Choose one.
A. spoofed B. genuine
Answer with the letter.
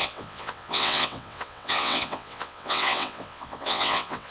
A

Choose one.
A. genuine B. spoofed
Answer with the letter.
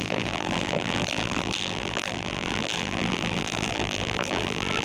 B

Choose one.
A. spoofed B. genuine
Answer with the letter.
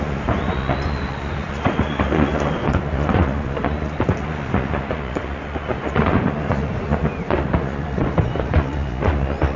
A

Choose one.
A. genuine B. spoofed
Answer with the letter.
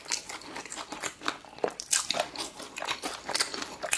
A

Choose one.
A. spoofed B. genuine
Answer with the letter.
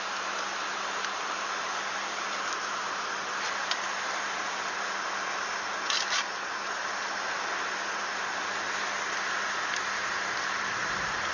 B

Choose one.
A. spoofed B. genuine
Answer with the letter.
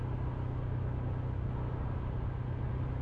B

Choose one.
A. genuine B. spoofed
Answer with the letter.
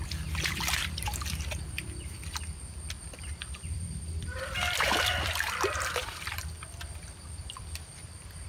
B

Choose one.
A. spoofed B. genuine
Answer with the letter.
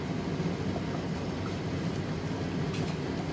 B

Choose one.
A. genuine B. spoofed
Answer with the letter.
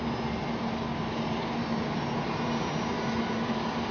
A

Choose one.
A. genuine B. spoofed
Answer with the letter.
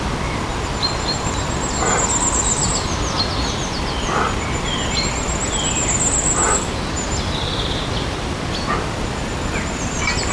A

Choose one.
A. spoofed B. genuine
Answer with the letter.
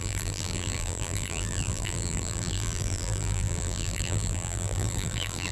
A